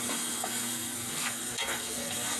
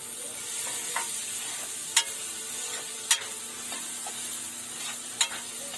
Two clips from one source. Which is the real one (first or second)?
second